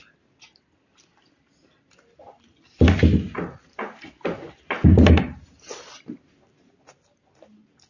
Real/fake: real